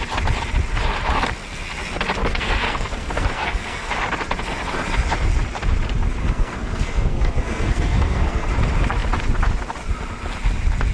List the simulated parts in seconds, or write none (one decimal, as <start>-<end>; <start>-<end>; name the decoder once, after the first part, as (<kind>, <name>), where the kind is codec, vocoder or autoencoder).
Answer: 2.3-3.9 (codec, SNAC); 6.2-8.5